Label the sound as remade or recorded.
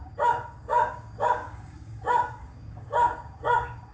remade